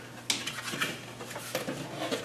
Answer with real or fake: real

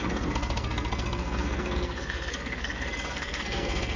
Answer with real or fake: fake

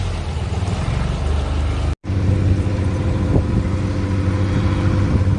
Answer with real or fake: real